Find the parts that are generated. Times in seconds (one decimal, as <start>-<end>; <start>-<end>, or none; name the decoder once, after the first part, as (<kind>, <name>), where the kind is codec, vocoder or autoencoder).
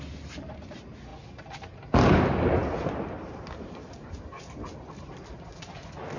none